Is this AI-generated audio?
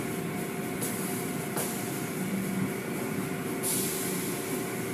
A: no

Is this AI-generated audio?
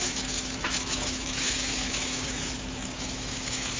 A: yes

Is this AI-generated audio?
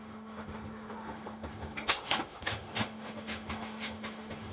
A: yes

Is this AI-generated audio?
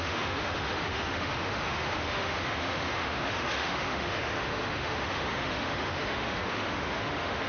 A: yes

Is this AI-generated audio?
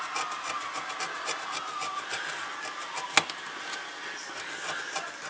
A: no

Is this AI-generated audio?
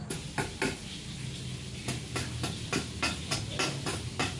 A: no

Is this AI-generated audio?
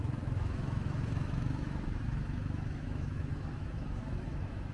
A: yes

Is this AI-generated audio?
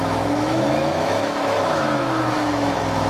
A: yes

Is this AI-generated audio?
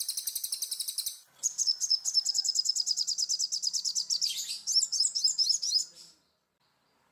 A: no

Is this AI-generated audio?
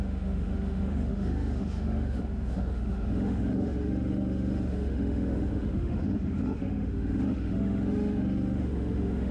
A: yes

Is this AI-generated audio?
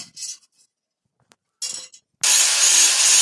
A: no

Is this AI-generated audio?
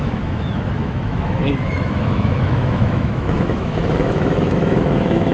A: yes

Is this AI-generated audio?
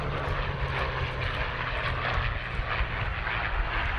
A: no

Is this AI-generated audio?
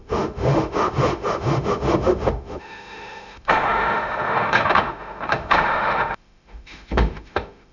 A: yes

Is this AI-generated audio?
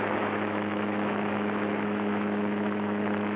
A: yes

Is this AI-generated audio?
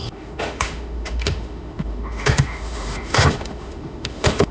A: yes